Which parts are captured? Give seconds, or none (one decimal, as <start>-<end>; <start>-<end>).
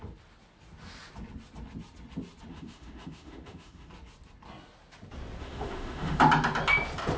0.0-2.5; 3.9-5.4; 6.2-7.2